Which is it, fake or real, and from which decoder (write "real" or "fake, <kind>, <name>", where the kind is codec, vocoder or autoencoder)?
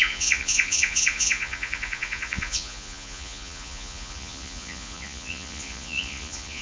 fake, vocoder, Vocos